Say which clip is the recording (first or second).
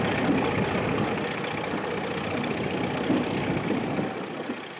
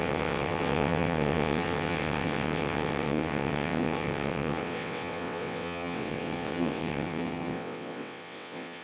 first